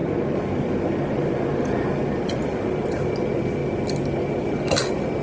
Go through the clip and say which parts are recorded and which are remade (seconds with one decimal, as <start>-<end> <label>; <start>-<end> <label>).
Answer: 0.0-5.2 recorded